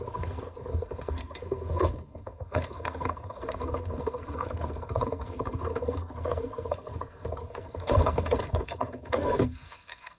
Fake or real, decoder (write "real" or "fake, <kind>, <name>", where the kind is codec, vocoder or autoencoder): fake, codec, SNAC